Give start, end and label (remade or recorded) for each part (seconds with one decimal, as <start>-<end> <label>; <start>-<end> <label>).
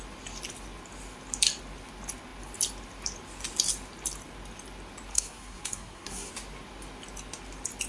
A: 0.0-5.1 recorded; 5.1-6.3 remade; 6.3-7.9 recorded